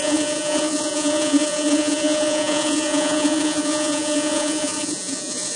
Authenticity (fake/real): fake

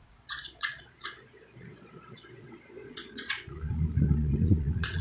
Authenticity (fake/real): fake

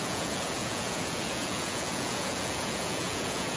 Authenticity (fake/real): fake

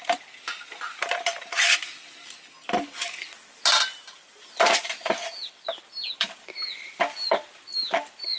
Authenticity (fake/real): real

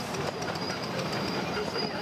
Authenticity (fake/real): real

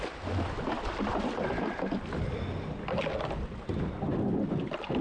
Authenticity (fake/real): real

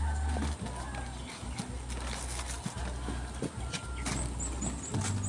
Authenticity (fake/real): real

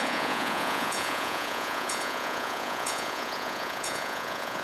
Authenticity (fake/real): fake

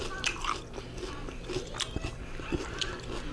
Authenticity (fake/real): real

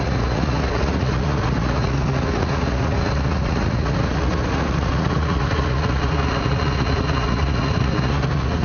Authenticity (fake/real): fake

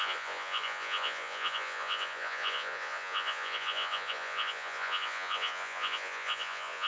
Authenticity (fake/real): fake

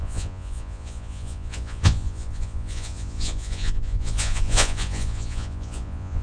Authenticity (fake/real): fake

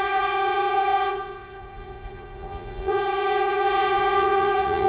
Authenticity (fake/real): fake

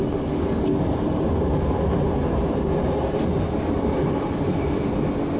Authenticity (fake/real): real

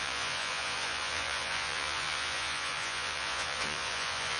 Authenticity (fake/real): fake